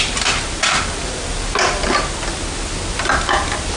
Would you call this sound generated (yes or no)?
no